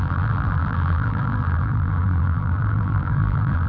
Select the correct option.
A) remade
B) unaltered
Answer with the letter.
A